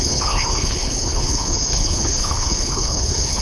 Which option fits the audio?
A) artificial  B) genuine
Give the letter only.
A